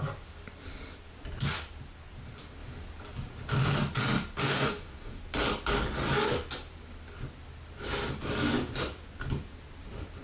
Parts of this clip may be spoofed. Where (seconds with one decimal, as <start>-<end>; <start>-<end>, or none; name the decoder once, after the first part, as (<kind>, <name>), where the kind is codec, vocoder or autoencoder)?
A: 4.4-5.2 (codec, DAC)